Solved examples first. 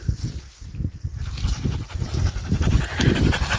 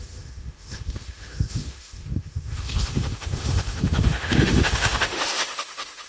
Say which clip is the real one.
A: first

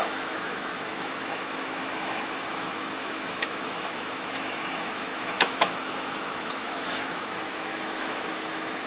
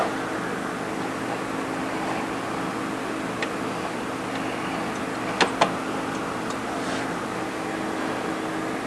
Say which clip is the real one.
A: second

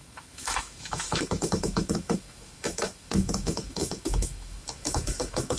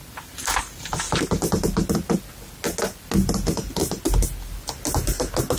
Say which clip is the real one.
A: second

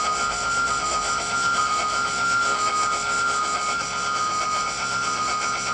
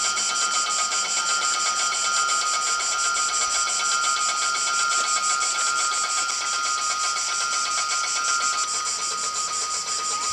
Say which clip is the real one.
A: second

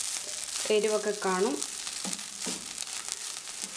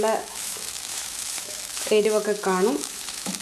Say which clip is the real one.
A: first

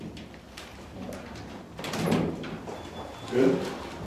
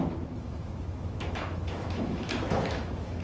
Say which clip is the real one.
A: first